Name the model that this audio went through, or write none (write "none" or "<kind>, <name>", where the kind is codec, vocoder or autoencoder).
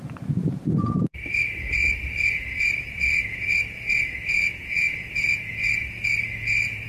vocoder, Vocos